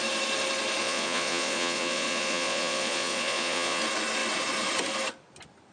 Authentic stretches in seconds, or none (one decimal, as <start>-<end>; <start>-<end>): 0.0-0.8; 3.8-5.7